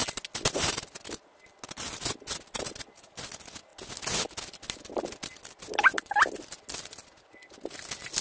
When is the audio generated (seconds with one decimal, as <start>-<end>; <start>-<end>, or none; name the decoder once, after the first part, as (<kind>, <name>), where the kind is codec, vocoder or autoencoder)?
none